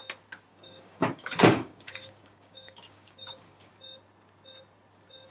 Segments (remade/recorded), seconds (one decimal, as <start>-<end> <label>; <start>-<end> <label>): 0.0-0.5 recorded; 0.5-3.7 remade; 3.7-5.3 recorded